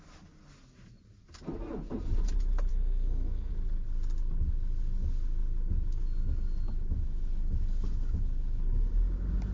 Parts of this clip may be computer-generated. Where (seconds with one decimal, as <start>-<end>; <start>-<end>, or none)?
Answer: 2.7-3.5